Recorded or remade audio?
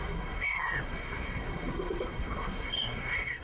remade